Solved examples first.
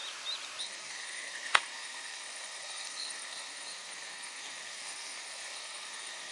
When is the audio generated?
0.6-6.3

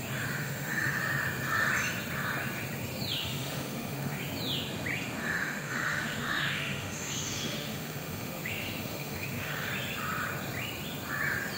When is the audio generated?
0.4-1.0; 3.2-4.2; 5.2-9.7

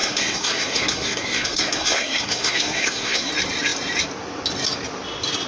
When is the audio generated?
0.0-3.3